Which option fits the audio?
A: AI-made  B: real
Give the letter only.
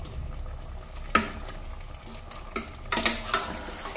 B